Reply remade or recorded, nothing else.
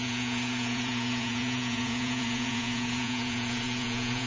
remade